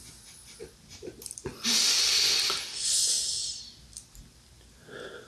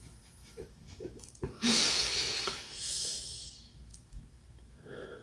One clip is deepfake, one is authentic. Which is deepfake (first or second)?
second